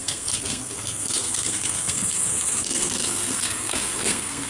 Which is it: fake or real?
fake